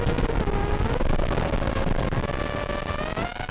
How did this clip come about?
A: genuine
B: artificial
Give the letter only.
A